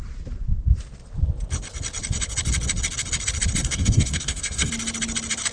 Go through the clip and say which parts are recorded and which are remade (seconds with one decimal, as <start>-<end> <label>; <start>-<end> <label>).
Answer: 0.0-3.6 recorded; 3.6-4.7 remade; 4.7-5.5 recorded